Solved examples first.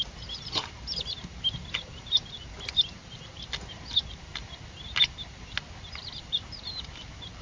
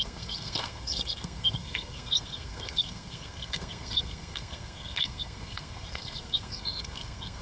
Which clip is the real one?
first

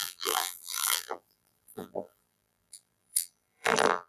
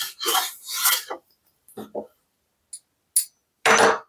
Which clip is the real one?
second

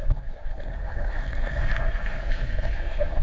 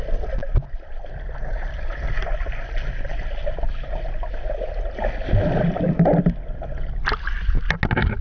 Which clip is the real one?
second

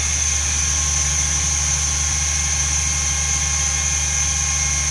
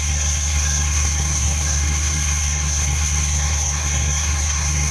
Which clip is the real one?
first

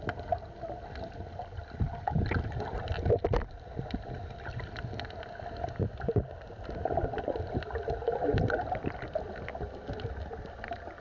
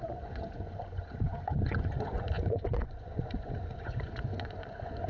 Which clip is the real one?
first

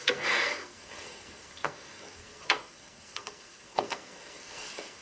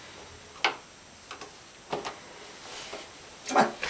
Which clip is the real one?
second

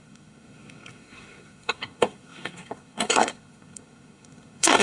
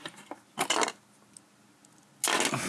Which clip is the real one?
second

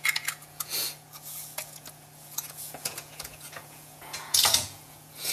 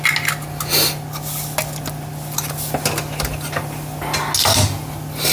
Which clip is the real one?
second